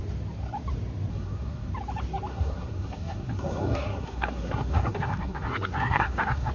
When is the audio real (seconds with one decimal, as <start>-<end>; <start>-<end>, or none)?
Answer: 0.0-1.1; 1.7-2.3